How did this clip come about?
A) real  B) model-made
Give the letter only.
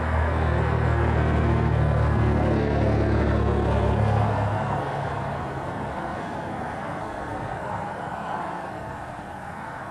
B